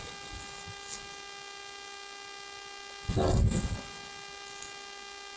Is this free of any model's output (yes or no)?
yes